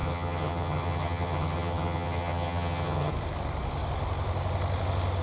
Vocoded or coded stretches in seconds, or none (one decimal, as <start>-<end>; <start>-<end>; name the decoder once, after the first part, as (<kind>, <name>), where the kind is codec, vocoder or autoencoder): 0.0-3.1 (vocoder, HiFi-GAN)